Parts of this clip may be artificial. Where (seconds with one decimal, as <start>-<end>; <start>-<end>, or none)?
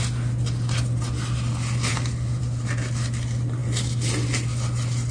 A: none